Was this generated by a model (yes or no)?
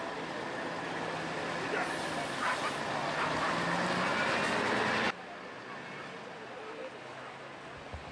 no